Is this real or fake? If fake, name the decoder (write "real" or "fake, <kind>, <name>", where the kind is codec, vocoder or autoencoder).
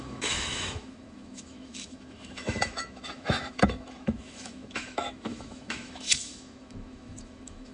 fake, autoencoder, DAC-VAE